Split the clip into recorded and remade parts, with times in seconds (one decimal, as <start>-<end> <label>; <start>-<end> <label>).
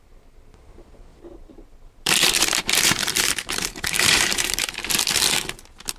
0.0-1.1 recorded; 1.1-4.7 remade; 4.7-6.0 recorded